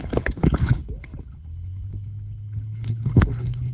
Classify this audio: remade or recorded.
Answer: remade